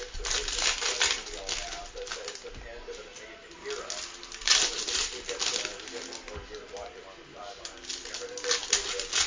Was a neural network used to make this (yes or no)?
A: no